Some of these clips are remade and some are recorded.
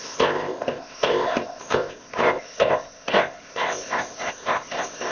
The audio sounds remade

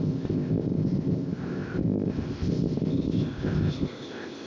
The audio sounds remade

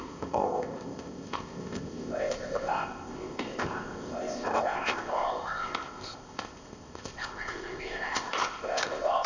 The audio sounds remade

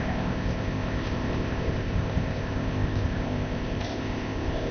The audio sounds remade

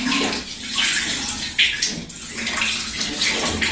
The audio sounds recorded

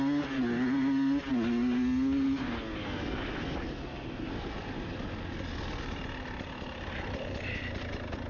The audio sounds recorded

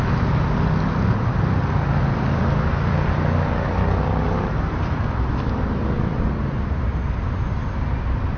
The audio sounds recorded